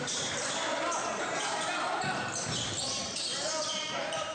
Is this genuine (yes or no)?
no